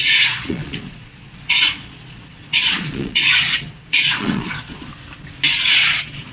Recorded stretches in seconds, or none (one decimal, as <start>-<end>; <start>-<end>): 4.9-5.7